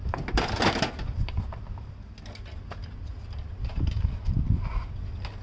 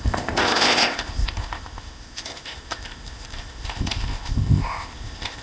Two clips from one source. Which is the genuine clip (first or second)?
first